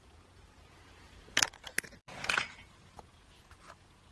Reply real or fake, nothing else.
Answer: fake